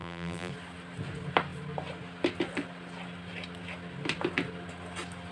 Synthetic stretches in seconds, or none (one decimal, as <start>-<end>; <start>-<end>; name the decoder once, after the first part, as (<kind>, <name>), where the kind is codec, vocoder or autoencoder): 0.0-0.5 (vocoder, BigVGAN v2)